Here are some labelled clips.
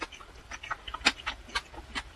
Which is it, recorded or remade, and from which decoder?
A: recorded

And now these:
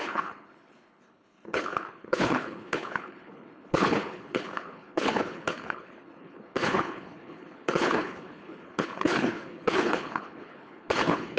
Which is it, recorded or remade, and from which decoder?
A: remade, codec, HILCodec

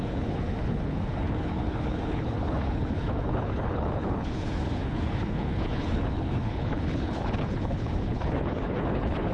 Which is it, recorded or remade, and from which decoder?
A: remade, codec, HILCodec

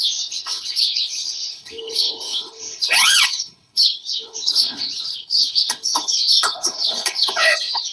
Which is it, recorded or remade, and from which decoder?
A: remade, codec, HILCodec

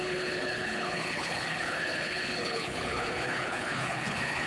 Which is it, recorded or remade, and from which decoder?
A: remade, codec, HILCodec